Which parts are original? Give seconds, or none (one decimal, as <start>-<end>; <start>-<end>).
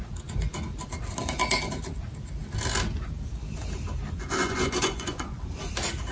0.0-4.4; 5.4-6.1